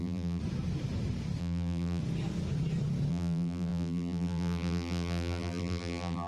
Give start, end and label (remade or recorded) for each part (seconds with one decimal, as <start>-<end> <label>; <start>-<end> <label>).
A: 0.0-0.4 remade; 0.4-1.4 recorded; 1.4-2.0 remade; 2.0-3.1 recorded; 3.1-6.3 remade